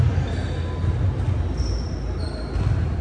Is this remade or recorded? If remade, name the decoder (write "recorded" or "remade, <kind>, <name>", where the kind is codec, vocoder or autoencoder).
recorded